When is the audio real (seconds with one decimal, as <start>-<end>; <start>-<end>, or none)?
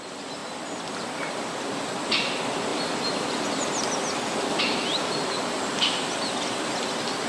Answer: 0.0-7.3